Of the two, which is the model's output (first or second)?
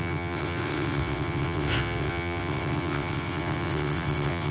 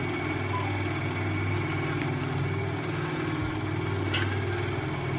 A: first